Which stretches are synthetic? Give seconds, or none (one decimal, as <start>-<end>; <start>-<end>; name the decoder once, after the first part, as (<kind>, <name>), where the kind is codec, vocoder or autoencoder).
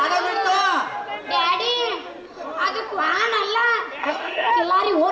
4.0-4.5 (codec, SNAC)